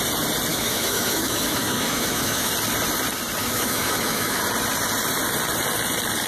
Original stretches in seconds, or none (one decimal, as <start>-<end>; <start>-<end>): 0.0-0.5; 2.5-3.4; 4.4-6.3